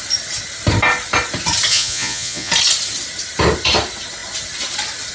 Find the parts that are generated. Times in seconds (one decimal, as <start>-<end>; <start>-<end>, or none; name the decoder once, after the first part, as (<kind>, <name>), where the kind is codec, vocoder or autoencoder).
1.7-2.5 (vocoder, Vocos)